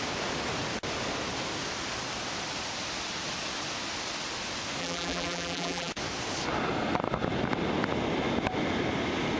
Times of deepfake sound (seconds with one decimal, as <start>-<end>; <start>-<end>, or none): 4.8-5.9